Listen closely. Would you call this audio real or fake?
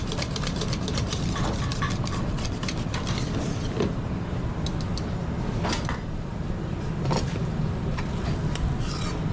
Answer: fake